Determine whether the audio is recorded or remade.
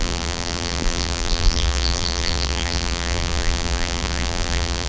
remade